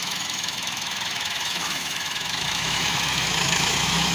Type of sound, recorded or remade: remade